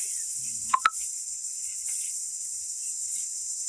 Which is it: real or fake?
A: fake